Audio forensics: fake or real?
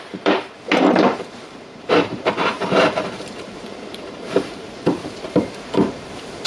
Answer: fake